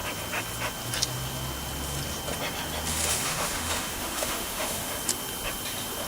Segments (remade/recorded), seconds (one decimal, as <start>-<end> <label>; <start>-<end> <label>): 0.0-2.9 recorded; 2.9-4.9 remade; 4.9-6.1 recorded